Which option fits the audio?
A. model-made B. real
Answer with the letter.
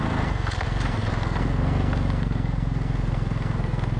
A